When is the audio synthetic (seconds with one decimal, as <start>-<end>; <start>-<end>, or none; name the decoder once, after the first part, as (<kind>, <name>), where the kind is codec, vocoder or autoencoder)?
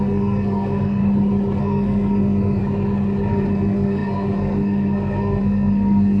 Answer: 0.0-1.0 (codec, SNAC); 1.6-2.6; 3.3-6.2